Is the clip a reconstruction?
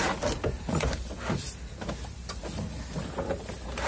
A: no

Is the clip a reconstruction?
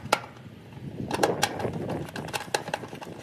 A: no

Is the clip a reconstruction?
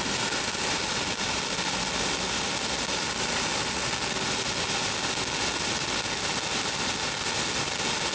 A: no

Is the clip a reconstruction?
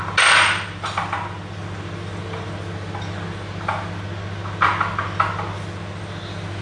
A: no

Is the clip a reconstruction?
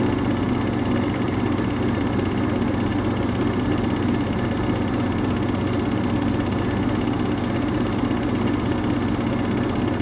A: no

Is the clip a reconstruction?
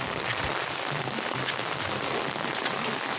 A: no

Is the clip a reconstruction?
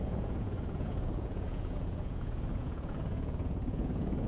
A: yes